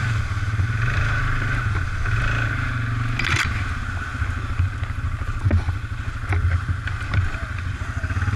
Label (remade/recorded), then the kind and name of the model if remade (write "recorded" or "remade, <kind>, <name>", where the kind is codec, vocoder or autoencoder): recorded